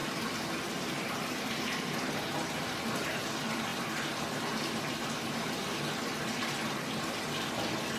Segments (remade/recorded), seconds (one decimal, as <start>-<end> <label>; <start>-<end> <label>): 0.0-8.0 recorded